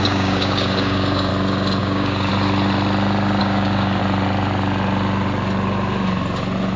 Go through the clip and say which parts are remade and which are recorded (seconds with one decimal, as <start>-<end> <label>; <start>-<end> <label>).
0.0-1.3 remade; 1.3-1.8 recorded; 1.8-2.3 remade; 2.3-3.4 recorded; 3.4-4.0 remade; 4.0-6.8 recorded